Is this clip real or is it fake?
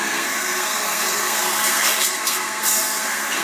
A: fake